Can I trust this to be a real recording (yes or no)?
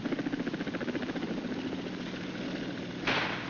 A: yes